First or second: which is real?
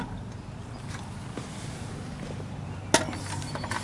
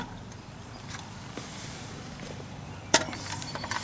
first